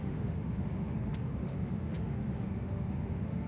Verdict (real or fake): fake